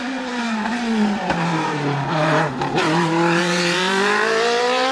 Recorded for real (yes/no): no